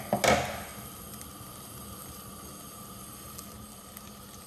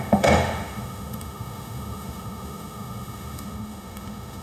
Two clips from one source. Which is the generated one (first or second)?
second